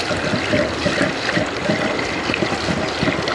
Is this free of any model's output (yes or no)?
yes